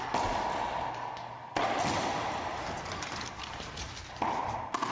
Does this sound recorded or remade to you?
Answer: recorded